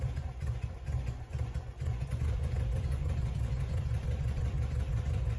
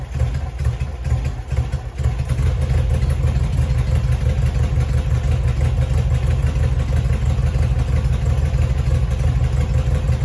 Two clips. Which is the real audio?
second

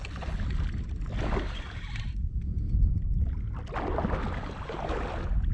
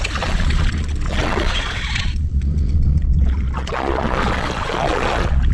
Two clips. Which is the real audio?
first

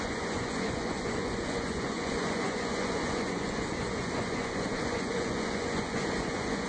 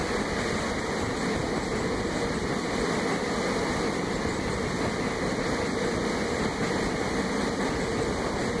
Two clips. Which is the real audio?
second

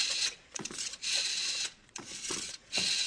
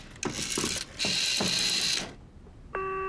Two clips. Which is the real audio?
second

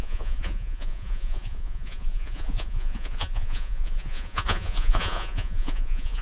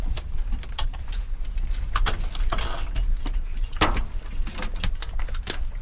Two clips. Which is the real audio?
second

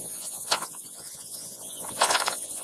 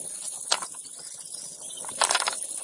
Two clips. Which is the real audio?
second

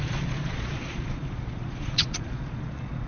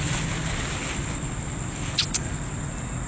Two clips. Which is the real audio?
second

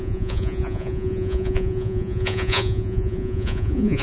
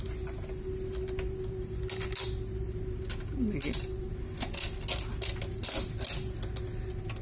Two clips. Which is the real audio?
second